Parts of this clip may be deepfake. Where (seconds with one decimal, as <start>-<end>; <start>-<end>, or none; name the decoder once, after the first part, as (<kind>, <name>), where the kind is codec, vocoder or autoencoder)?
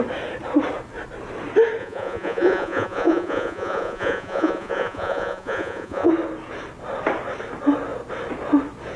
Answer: 1.8-6.1 (vocoder, Vocos)